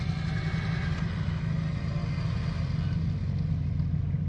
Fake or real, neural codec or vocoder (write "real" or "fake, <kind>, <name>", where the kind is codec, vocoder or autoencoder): real